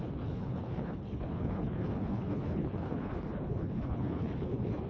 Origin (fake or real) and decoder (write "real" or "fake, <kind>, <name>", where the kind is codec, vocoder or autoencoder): fake, codec, HILCodec